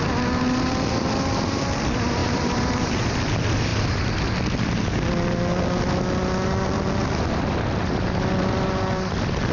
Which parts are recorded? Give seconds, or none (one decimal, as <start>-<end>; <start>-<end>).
0.0-2.2; 3.0-9.5